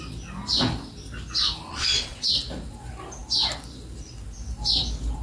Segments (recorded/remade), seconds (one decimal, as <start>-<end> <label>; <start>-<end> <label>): 0.0-1.7 recorded; 1.7-2.4 remade; 2.4-5.2 recorded